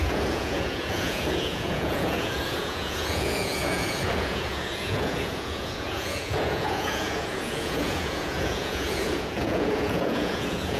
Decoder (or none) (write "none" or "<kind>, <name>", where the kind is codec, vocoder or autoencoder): vocoder, Vocos